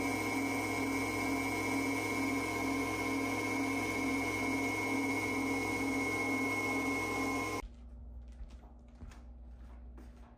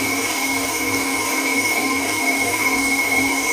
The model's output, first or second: second